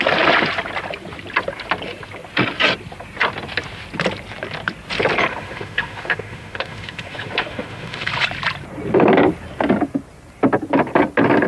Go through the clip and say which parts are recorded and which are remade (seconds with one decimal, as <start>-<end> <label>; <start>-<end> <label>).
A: 0.0-5.3 recorded; 5.3-8.1 remade; 8.1-11.5 recorded